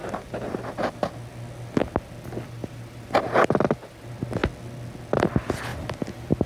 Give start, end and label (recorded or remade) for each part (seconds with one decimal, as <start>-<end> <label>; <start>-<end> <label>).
0.0-6.5 recorded